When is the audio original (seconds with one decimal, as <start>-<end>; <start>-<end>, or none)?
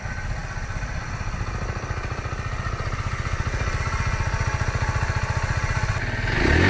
0.0-6.7